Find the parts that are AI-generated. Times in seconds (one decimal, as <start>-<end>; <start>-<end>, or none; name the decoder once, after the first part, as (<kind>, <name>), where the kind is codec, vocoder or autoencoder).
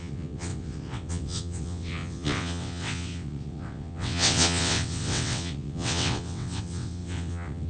0.0-7.7 (vocoder, WaveNeXt)